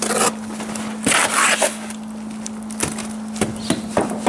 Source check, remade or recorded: recorded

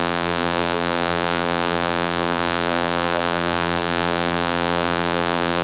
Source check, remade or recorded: remade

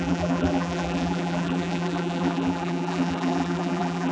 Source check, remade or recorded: remade